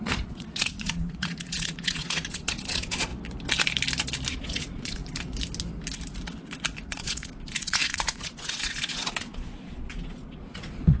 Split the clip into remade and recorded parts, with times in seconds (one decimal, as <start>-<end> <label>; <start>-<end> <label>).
0.0-3.1 remade; 3.1-4.3 recorded; 4.3-5.0 remade; 5.0-6.9 recorded; 6.9-11.0 remade